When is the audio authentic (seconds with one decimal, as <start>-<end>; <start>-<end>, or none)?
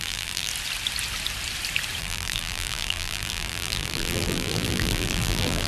0.5-2.0